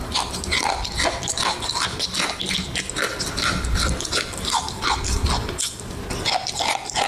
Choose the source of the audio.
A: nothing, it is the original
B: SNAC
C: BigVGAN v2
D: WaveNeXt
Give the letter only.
A